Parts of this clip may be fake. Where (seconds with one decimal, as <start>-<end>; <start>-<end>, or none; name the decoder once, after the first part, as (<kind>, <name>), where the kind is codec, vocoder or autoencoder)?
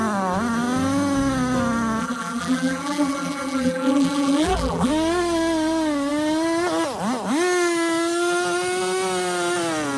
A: 2.0-4.9 (vocoder, BigVGAN v2)